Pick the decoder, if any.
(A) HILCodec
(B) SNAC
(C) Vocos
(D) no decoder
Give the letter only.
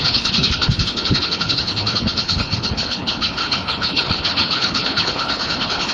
A